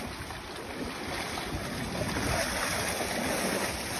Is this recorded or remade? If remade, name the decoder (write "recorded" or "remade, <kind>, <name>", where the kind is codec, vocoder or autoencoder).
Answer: recorded